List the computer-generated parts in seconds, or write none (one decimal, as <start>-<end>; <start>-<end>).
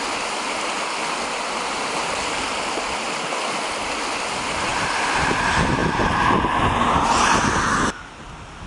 4.7-5.3; 5.8-7.4